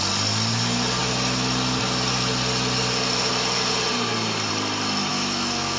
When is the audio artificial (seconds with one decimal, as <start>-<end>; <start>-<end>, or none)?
5.1-5.8